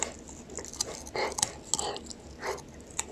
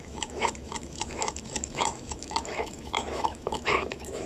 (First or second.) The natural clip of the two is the first